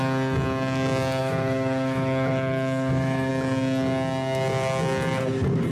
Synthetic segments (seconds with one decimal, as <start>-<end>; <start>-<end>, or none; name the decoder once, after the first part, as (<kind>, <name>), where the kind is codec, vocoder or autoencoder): 1.2-3.3 (autoencoder, DAC-VAE)